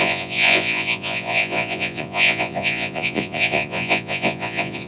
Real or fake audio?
fake